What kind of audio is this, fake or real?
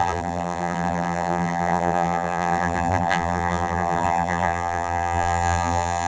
fake